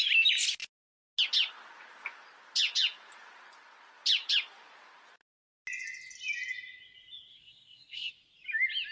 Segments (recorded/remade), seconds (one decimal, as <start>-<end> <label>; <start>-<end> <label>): 0.0-7.3 recorded; 7.3-8.1 remade; 8.1-8.9 recorded